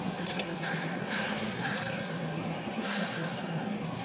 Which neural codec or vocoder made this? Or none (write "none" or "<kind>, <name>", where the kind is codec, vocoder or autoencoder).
codec, SNAC